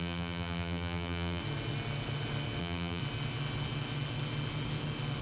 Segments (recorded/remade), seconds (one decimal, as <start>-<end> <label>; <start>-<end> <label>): 0.0-1.4 remade; 1.4-2.6 recorded; 2.6-3.0 remade; 3.0-5.2 recorded